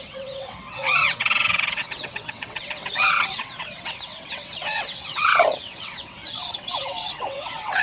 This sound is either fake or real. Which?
fake